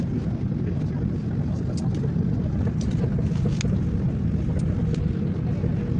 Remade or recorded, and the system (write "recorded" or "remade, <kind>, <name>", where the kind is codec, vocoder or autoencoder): recorded